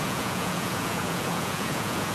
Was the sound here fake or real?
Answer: fake